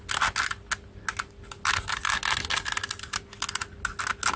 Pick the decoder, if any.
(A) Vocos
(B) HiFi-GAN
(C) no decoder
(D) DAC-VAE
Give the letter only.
C